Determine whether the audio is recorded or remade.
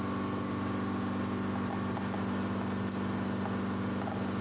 recorded